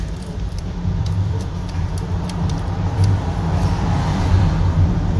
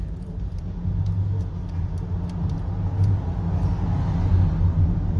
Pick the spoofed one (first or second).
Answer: first